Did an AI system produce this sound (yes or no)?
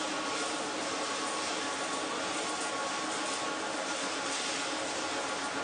no